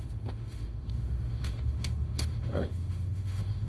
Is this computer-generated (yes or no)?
yes